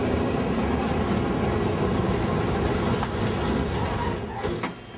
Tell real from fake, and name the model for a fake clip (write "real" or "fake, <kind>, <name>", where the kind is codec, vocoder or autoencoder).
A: real